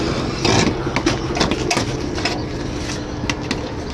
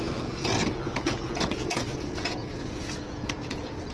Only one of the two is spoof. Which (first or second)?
second